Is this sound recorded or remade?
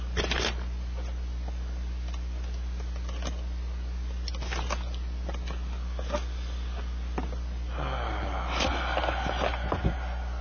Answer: recorded